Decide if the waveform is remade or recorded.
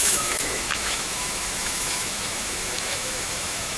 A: remade